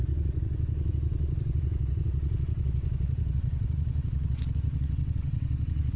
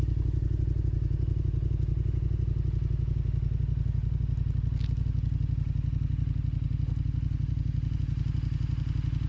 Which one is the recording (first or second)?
second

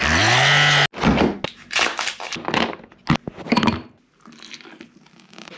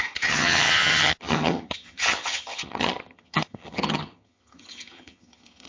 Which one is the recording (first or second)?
first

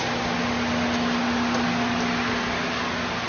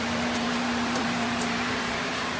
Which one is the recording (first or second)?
first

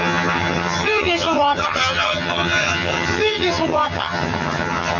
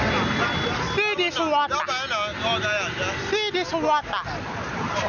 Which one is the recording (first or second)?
second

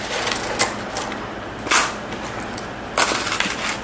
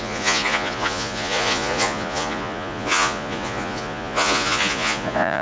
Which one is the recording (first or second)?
first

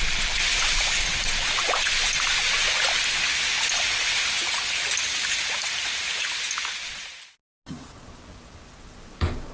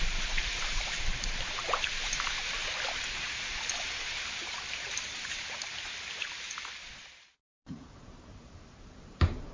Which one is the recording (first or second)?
first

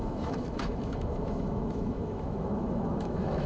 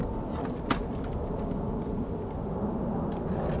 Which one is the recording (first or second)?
second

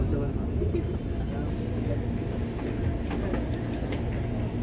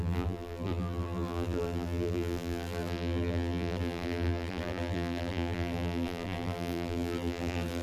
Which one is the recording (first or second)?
first